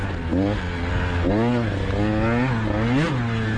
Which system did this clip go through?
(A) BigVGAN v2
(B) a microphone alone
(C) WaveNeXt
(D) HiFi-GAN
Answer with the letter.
B